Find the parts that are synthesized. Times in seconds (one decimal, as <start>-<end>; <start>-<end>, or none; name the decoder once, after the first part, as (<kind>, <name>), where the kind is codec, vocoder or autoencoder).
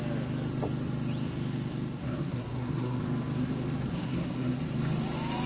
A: 2.0-3.0 (codec, SNAC); 3.9-4.6